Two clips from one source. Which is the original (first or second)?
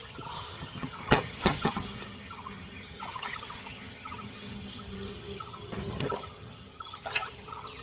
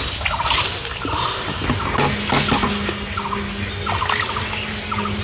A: second